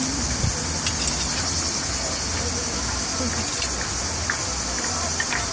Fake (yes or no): no